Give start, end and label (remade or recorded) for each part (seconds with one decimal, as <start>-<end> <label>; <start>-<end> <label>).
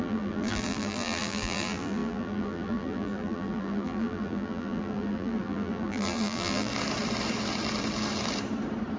0.0-6.7 remade; 6.7-9.0 recorded